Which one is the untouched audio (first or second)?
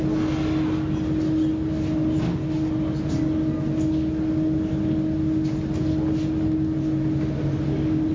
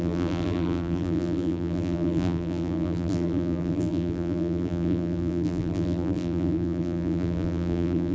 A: first